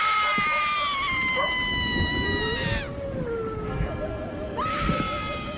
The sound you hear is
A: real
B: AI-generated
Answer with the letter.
A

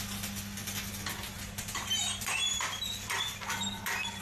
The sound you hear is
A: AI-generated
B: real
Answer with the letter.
B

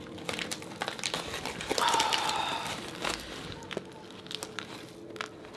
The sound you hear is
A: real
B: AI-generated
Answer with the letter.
A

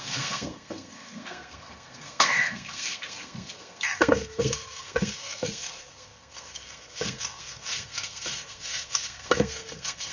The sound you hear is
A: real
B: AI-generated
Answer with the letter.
B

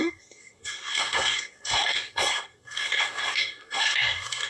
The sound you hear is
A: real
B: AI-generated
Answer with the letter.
B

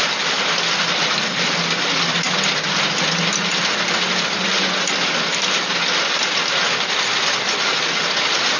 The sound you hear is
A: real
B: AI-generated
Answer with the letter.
A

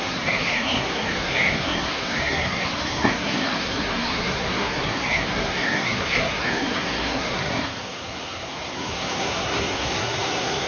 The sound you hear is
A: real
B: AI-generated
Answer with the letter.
B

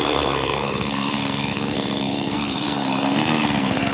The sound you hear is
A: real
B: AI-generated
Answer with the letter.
B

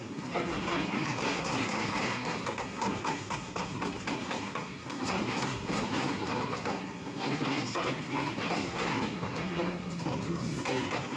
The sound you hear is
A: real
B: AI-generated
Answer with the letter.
B